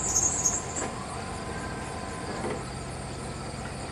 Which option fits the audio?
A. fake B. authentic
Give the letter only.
B